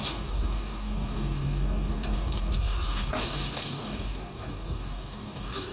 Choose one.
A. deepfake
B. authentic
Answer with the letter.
A